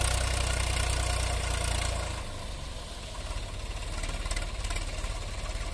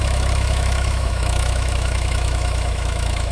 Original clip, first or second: first